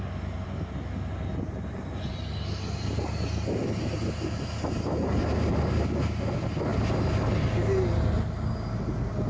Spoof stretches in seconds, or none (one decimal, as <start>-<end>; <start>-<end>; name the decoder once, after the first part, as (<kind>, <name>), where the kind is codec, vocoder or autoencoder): none